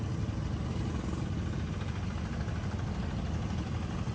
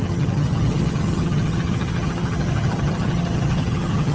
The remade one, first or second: second